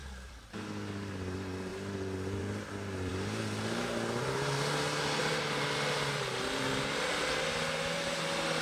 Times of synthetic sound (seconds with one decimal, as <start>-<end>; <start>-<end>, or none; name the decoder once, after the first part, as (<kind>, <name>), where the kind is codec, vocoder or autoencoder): 0.0-0.6 (vocoder, BigVGAN v2); 1.7-2.4; 5.2-7.2

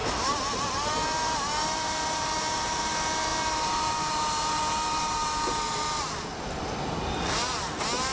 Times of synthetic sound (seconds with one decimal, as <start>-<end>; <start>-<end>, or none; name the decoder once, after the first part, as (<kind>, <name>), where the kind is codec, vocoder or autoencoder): 0.0-2.8 (vocoder, BigVGAN v2); 3.3-6.6